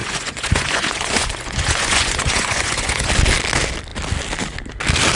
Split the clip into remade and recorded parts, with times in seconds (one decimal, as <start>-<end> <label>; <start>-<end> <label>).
0.0-3.1 remade; 3.1-5.1 recorded